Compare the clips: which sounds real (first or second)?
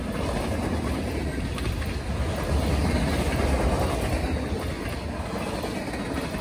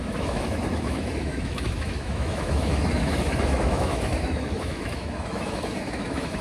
first